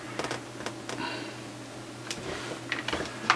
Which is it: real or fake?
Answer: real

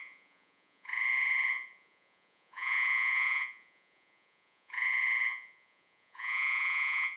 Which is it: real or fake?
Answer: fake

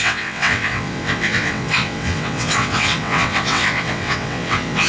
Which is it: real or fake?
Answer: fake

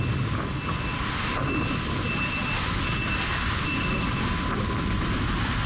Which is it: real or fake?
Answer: real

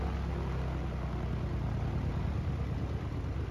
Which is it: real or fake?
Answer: real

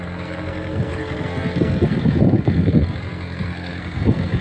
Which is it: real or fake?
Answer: fake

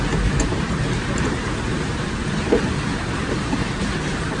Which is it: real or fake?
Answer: fake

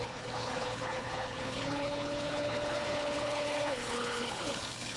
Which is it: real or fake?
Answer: fake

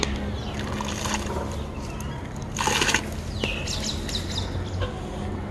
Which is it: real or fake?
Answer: real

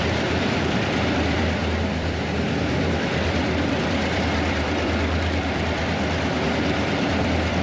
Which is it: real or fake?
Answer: fake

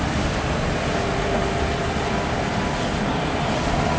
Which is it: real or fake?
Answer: real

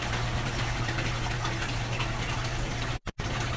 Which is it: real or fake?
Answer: real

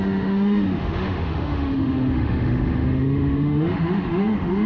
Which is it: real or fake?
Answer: fake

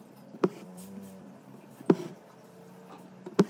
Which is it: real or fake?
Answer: fake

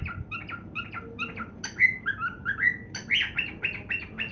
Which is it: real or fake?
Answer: real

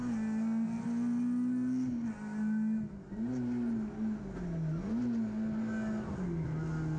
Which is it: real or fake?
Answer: real